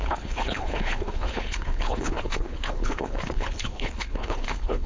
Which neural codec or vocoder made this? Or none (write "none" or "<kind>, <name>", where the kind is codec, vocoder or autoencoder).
codec, HILCodec